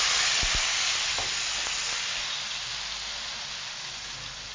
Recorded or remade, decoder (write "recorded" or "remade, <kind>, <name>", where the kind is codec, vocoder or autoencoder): recorded